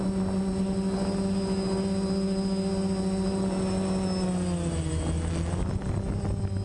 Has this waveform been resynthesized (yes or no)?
no